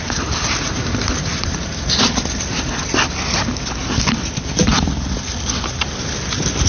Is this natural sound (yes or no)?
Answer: yes